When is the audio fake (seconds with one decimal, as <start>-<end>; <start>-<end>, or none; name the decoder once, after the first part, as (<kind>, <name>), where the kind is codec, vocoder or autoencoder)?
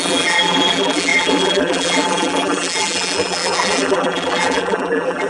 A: 0.0-5.3 (vocoder, BigVGAN v2)